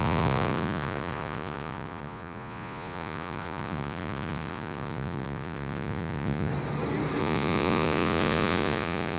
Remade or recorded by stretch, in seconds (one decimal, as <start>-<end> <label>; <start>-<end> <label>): 0.0-6.5 remade; 6.5-7.2 recorded; 7.2-9.2 remade